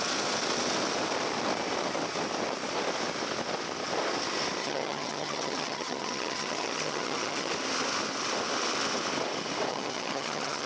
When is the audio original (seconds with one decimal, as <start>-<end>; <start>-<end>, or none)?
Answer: 0.0-4.6; 7.5-9.7